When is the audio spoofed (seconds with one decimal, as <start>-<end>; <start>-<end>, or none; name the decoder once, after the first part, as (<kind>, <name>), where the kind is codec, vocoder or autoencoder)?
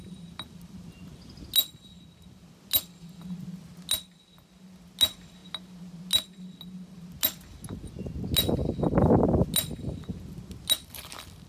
none